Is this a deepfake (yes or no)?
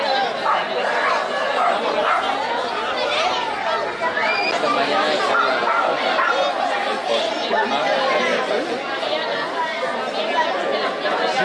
no